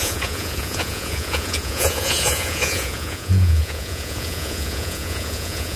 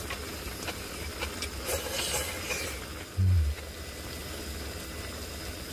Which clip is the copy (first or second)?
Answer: first